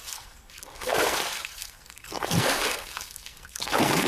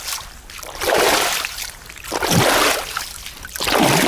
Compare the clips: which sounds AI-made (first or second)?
first